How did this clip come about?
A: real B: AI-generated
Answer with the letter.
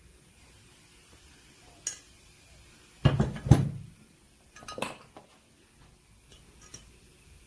A